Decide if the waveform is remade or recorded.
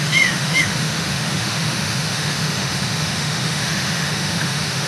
remade